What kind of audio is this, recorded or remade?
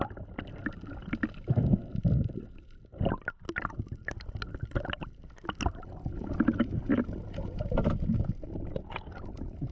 recorded